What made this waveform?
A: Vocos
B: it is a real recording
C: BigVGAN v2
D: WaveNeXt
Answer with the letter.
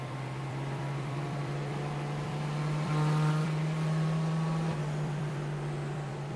C